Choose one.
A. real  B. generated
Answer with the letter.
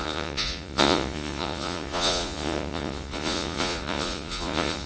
B